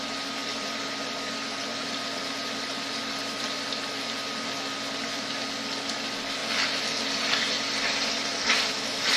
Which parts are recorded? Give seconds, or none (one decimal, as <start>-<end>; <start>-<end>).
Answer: 0.0-9.2